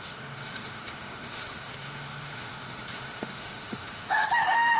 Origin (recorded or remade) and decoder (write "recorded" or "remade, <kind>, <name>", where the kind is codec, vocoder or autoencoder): remade, autoencoder, DAC-VAE